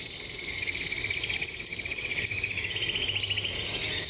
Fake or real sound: real